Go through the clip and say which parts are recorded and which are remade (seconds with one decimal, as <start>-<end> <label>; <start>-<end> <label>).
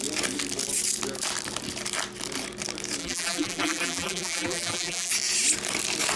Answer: 0.0-3.0 recorded; 3.0-5.1 remade; 5.1-6.2 recorded